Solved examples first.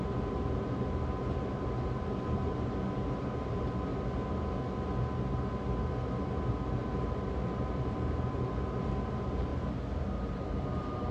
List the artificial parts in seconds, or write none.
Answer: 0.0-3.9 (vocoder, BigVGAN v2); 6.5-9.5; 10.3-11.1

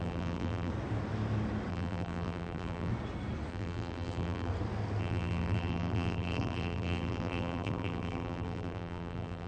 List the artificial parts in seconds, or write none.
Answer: 0.0-0.7 (vocoder, BigVGAN v2); 1.7-2.9; 3.5-4.5; 5.0-9.5